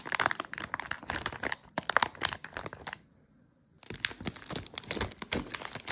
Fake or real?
real